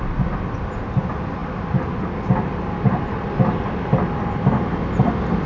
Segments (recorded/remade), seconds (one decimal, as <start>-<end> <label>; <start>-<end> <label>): 0.0-5.5 recorded